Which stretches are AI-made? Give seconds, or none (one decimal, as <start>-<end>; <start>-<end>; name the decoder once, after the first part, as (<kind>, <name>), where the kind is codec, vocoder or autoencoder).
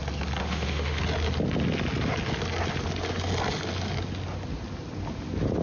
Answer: 0.4-1.0 (autoencoder, DAC-VAE)